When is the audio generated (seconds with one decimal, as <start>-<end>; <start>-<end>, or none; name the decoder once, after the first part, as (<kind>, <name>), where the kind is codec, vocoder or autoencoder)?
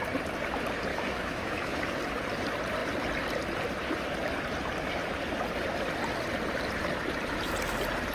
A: 0.9-1.8 (autoencoder, DAC-VAE)